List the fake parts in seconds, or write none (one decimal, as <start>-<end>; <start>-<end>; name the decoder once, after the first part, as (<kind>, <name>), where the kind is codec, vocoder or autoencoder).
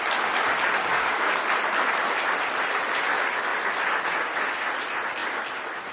0.8-1.4 (codec, DAC)